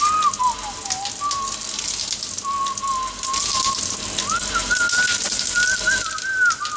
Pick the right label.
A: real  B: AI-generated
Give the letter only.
A